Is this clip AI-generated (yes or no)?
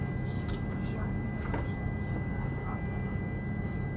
no